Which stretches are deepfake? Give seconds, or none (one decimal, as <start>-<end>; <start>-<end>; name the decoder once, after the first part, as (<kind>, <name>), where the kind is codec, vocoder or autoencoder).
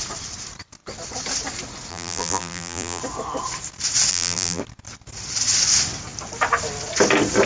1.9-3.0 (vocoder, BigVGAN v2); 4.1-4.6